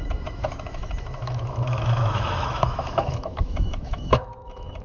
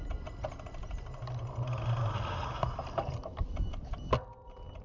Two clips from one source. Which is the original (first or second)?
second